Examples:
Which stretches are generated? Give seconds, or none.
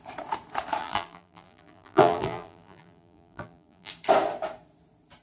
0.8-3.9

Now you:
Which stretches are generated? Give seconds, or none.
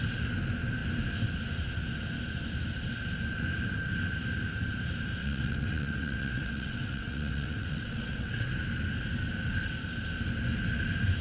5.2-8.5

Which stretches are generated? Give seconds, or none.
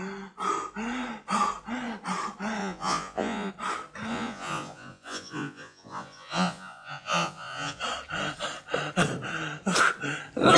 2.6-3.5; 4.1-7.8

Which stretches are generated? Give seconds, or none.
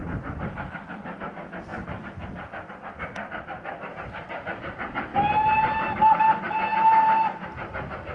none